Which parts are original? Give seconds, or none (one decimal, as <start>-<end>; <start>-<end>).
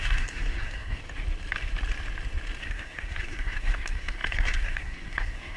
1.0-2.6